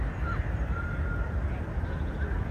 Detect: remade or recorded recorded